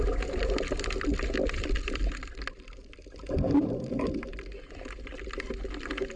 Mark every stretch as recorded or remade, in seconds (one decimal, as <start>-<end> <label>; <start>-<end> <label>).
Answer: 0.0-3.1 remade; 3.1-6.2 recorded